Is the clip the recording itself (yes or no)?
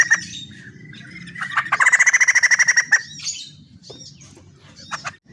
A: yes